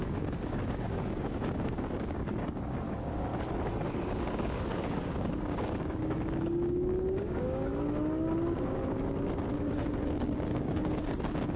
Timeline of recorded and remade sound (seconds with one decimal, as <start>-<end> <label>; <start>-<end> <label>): 0.0-3.3 remade; 3.3-3.9 recorded; 3.9-7.7 remade; 7.7-9.7 recorded; 9.7-11.6 remade